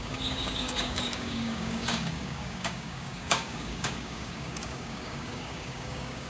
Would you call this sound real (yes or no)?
no